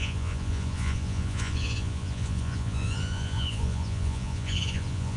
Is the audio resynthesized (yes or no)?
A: yes